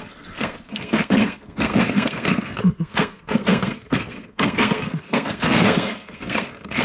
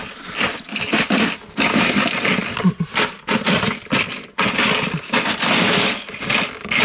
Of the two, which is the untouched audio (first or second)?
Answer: second